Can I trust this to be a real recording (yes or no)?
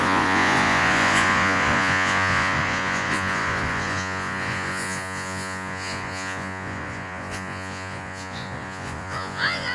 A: no